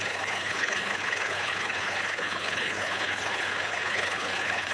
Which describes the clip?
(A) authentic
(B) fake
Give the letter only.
B